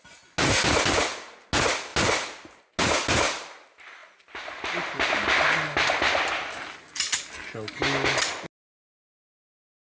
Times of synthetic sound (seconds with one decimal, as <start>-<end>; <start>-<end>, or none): none